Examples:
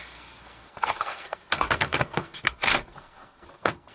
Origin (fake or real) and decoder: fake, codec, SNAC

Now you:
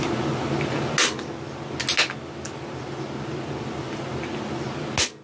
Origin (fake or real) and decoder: real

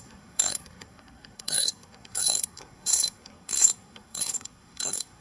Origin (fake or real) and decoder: fake, codec, SNAC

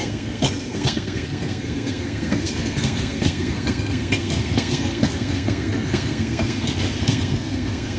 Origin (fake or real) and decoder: fake, codec, SNAC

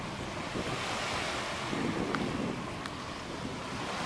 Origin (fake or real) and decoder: real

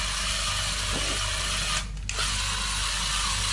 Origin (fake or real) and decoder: real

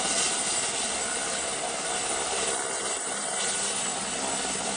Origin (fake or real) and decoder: real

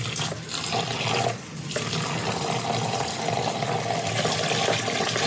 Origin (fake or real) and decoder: real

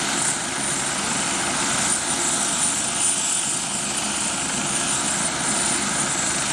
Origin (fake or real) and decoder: real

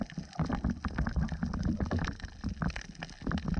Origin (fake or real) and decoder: real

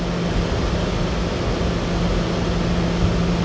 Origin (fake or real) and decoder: real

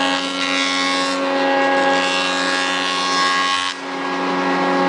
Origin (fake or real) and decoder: real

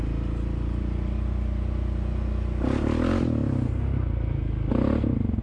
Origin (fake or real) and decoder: real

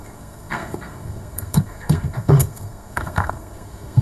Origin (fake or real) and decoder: fake, codec, SNAC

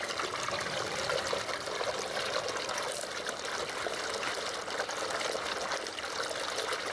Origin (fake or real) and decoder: real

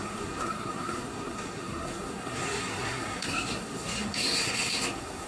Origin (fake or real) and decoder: fake, codec, SNAC